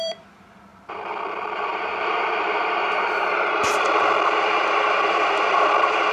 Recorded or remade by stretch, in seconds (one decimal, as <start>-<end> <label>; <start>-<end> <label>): 0.0-6.1 remade